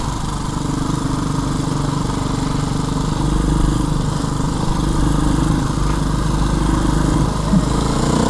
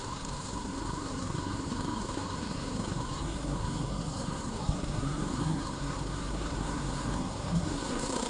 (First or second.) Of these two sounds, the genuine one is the first